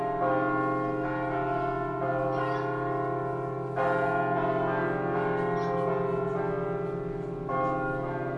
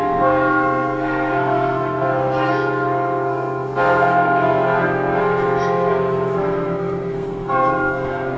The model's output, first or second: second